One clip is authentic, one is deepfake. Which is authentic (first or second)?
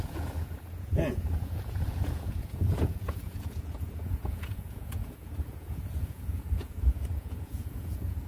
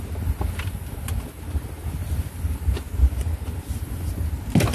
second